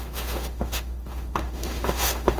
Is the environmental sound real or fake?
fake